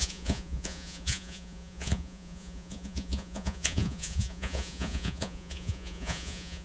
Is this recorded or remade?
remade